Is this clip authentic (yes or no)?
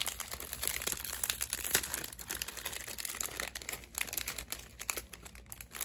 yes